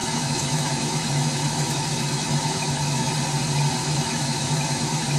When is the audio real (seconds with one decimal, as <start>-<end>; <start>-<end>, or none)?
3.1-3.8